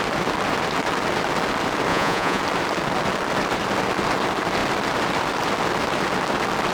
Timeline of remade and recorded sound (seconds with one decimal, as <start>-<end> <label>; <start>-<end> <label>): 0.0-1.9 recorded; 1.9-2.4 remade; 2.4-6.7 recorded